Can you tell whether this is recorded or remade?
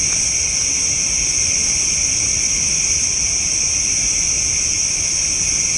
recorded